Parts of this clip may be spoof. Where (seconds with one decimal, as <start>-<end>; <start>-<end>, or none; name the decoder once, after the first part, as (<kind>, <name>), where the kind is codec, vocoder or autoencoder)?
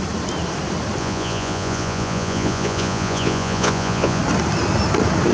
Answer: 1.0-4.2 (vocoder, Vocos)